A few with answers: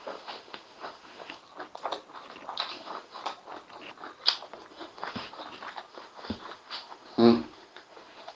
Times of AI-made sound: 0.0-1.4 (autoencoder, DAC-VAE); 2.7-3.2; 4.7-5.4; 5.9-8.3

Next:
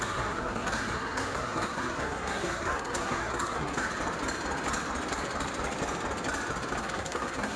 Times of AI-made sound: 0.0-3.9 (codec, SNAC); 6.8-7.6

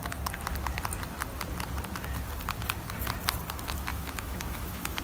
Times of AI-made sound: 3.9-5.0 (autoencoder, DAC-VAE)

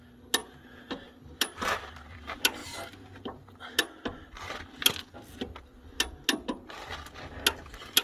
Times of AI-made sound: 0.4-0.9 (vocoder, Vocos)

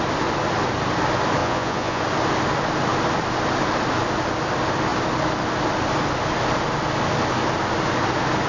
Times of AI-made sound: 1.4-2.0 (vocoder, Vocos)

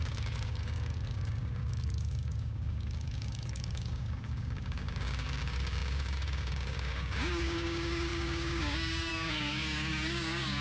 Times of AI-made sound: 0.0-10.6 (codec, DAC)

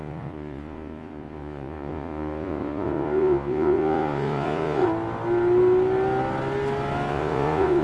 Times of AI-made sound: 0.0-4.8 (vocoder, Vocos); 7.1-7.8